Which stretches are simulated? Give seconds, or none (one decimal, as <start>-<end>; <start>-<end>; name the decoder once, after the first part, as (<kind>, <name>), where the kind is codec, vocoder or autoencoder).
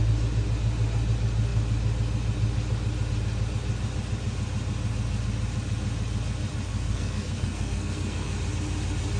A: 6.7-8.4 (codec, SNAC)